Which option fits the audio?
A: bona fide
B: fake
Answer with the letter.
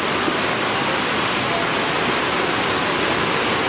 A